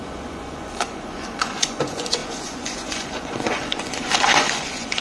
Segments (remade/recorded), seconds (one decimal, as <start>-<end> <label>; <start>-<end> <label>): 0.0-5.0 remade